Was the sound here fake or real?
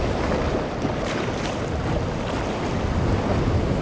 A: real